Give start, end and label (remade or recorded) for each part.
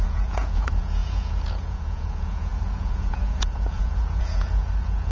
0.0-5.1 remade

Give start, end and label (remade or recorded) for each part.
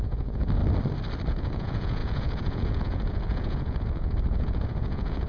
0.0-0.6 remade; 0.6-1.3 recorded; 1.3-5.3 remade